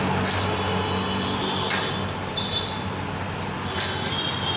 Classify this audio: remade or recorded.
recorded